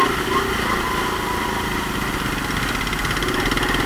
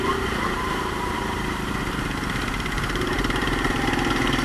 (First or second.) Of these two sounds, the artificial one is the second